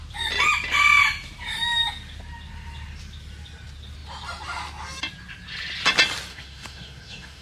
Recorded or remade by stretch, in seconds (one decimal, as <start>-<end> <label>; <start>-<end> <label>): 0.0-6.3 recorded; 6.3-7.4 remade